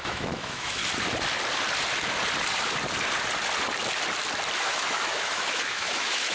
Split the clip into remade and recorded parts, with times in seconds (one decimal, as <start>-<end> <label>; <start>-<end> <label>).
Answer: 0.0-0.8 remade; 0.8-4.6 recorded; 4.6-6.3 remade